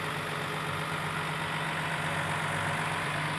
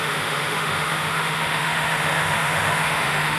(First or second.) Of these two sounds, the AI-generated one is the second